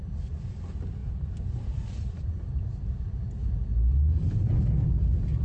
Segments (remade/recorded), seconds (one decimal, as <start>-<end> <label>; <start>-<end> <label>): 0.0-5.4 recorded